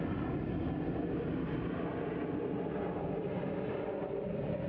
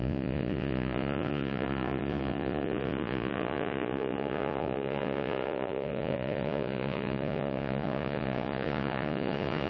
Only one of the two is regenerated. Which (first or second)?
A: second